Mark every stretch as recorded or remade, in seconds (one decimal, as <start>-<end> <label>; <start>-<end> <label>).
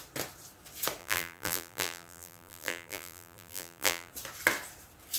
0.0-1.0 recorded; 1.0-4.1 remade; 4.1-5.2 recorded